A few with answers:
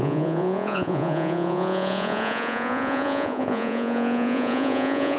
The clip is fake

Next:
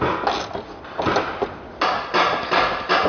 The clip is real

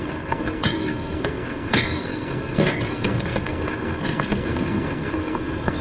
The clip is fake